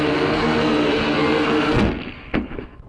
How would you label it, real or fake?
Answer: fake